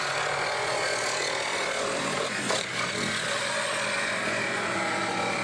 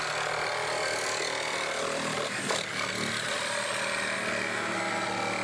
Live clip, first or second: second